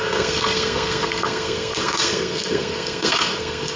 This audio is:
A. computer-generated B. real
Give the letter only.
A